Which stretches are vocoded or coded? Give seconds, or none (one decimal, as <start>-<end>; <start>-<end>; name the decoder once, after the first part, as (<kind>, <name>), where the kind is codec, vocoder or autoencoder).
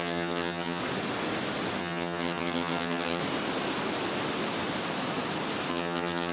0.0-0.8 (vocoder, HiFi-GAN); 1.8-3.2; 5.7-6.3